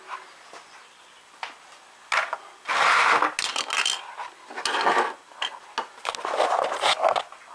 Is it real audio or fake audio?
real